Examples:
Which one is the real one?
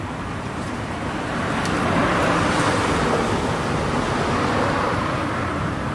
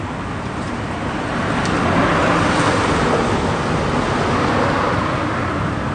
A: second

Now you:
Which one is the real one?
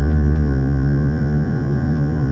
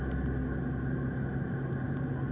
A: second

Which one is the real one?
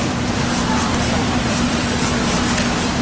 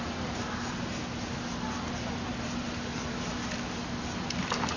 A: second